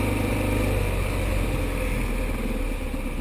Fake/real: real